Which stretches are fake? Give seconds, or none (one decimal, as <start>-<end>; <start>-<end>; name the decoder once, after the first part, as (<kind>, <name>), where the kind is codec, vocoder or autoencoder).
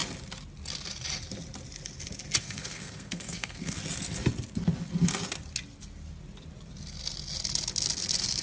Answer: 2.4-3.8 (codec, SNAC)